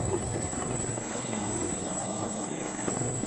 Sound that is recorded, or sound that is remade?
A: remade